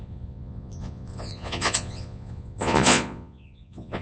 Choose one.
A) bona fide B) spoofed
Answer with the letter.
B